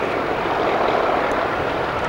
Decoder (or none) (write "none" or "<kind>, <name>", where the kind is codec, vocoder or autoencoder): none